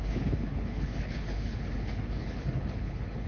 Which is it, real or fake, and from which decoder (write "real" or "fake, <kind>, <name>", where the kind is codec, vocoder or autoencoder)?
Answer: fake, codec, HILCodec